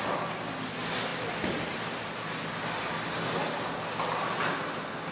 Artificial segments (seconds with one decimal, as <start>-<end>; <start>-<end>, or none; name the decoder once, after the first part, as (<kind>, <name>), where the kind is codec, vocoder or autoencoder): none

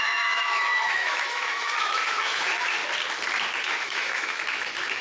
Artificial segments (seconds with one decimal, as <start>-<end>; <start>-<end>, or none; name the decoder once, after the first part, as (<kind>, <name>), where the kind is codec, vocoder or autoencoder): 0.0-2.8 (autoencoder, DAC-VAE); 3.6-5.0